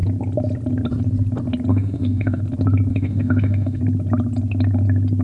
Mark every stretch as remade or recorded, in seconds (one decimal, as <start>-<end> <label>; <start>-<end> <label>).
0.0-1.7 recorded; 1.7-2.4 remade; 2.4-2.9 recorded; 2.9-3.8 remade; 3.8-5.2 recorded